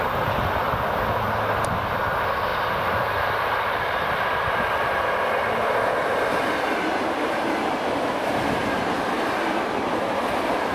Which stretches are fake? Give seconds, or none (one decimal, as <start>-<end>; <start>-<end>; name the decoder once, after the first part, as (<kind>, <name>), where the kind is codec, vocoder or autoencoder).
2.5-7.5 (vocoder, BigVGAN v2)